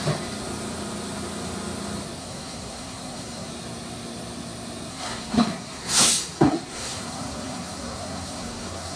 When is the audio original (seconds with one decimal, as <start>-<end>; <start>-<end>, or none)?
0.0-2.2; 3.5-4.9